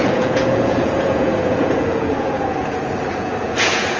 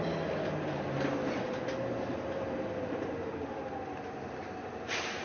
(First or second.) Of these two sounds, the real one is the second